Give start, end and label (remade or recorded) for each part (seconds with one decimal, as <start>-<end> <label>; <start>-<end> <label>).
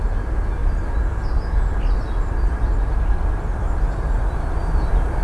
0.0-5.2 recorded